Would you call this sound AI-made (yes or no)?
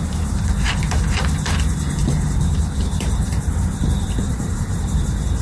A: yes